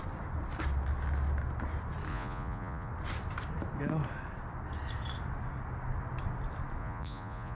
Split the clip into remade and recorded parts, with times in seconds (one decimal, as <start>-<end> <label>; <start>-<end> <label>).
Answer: 0.0-2.1 recorded; 2.1-2.9 remade; 2.9-6.8 recorded; 6.8-7.6 remade